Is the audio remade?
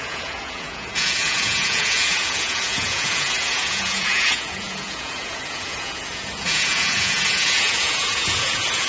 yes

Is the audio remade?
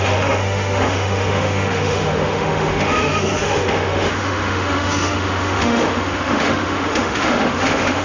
yes